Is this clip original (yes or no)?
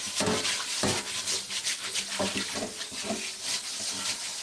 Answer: yes